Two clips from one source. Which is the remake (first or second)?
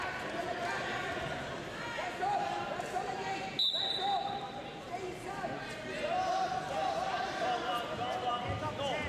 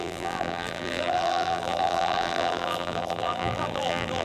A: second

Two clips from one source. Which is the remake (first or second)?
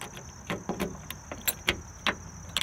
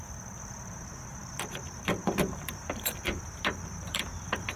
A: second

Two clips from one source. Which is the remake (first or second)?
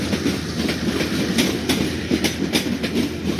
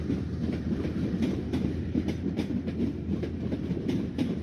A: second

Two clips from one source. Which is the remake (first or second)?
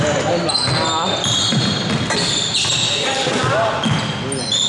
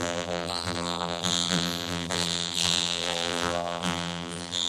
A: second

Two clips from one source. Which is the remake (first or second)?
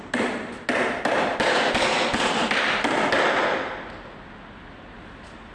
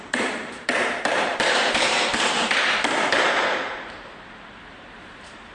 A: second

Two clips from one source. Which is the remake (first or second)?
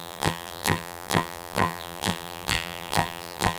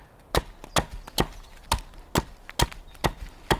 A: first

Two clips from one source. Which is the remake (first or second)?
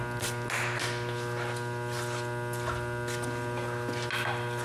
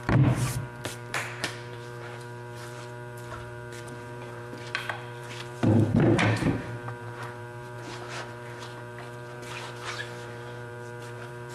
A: second